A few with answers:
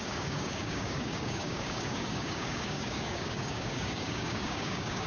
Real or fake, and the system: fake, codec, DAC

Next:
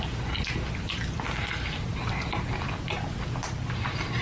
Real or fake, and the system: real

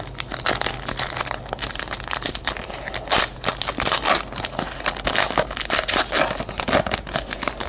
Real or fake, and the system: real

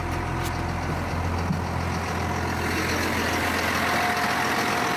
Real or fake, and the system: real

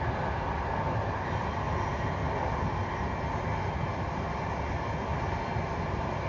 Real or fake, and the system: real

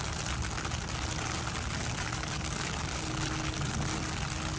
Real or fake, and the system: real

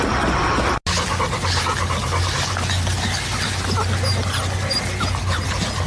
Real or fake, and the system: real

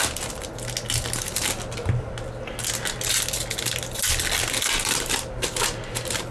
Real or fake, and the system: real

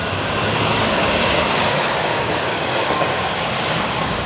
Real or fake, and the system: fake, codec, DAC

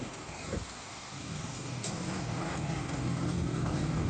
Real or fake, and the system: fake, codec, DAC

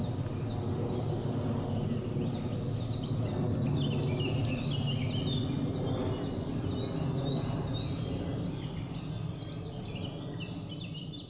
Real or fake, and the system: real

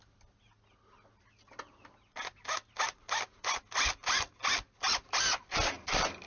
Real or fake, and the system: real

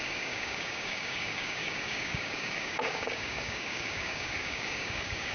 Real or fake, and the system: fake, codec, DAC